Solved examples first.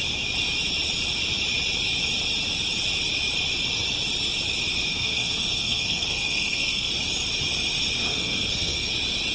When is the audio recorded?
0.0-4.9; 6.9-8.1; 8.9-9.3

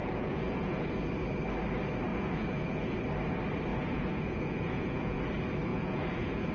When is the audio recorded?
0.8-2.1; 3.0-3.7; 5.2-5.7